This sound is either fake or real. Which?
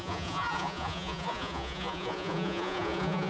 fake